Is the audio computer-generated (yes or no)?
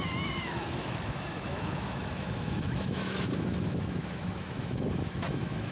yes